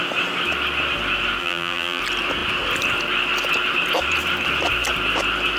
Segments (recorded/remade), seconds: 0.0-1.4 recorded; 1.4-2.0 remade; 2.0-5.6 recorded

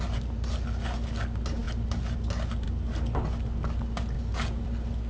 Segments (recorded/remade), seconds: 0.0-5.1 recorded

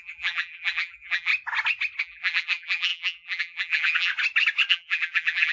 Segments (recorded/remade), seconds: 0.0-1.3 remade; 1.3-2.0 recorded; 2.0-4.1 remade; 4.1-4.7 recorded; 4.7-5.5 remade

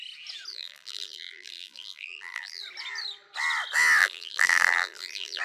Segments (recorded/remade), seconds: 0.0-0.5 recorded; 0.5-2.6 remade; 2.6-4.0 recorded; 4.0-5.4 remade

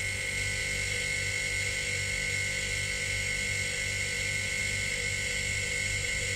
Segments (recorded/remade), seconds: 0.0-6.4 recorded

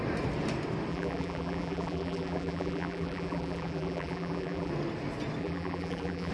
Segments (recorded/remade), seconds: 0.0-0.9 recorded; 0.9-4.7 remade; 4.7-5.4 recorded; 5.4-6.3 remade